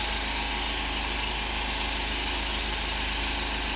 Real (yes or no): yes